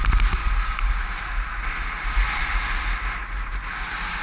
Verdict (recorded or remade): recorded